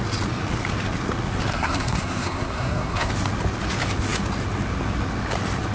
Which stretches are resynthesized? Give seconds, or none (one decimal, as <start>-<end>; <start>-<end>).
1.5-3.1